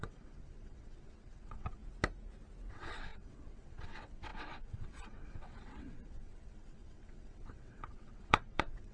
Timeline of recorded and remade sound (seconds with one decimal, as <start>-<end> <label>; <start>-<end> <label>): 0.0-1.8 remade; 1.8-2.7 recorded; 2.7-8.9 remade